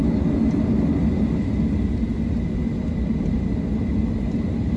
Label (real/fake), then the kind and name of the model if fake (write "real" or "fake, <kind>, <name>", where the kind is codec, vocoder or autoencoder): real